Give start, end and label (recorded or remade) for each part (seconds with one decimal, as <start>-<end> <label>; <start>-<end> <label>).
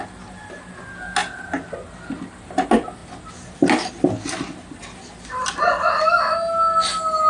0.0-7.3 recorded